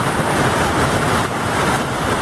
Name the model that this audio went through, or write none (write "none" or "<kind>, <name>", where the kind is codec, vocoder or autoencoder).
none